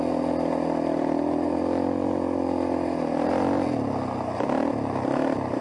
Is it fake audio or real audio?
real